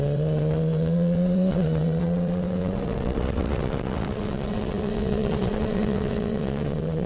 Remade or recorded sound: remade